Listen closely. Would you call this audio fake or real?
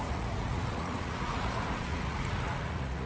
fake